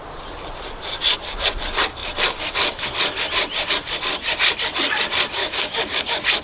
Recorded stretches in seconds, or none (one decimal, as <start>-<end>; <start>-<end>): 0.0-5.4; 6.0-6.4